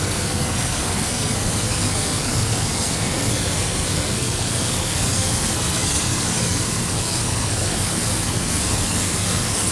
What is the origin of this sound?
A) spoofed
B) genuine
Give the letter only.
A